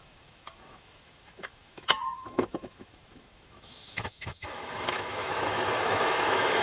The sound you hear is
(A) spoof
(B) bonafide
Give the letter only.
A